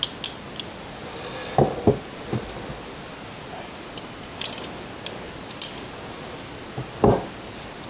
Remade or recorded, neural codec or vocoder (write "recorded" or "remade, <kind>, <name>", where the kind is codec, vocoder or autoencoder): recorded